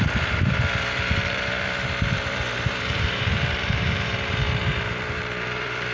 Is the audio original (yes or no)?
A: no